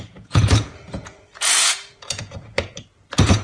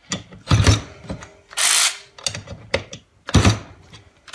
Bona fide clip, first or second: second